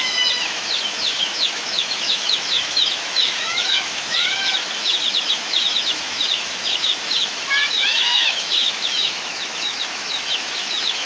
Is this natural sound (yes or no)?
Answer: no